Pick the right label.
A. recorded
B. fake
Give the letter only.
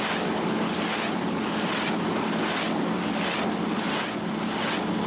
A